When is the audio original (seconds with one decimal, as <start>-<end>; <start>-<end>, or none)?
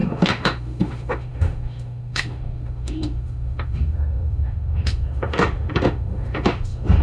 none